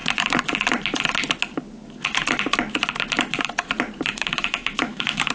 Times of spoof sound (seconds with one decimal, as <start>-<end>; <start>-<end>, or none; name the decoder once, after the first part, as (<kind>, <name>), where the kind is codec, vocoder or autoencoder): 4.1-5.3 (autoencoder, DAC-VAE)